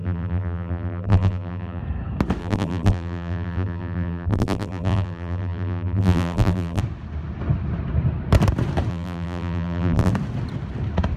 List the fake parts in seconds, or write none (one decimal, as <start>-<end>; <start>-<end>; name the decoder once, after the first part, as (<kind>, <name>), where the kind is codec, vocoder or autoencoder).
0.0-1.8 (vocoder, BigVGAN v2); 2.4-6.8; 8.9-10.1